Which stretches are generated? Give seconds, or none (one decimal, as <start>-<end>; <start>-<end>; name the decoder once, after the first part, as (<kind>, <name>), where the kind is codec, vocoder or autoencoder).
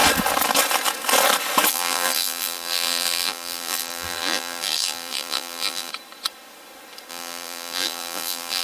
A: 1.7-5.9 (vocoder, BigVGAN v2); 7.1-8.6